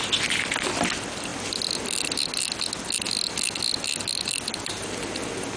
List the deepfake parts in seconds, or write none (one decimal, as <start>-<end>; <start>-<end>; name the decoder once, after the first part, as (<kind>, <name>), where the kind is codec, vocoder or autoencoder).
none